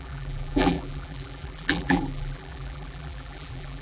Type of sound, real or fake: fake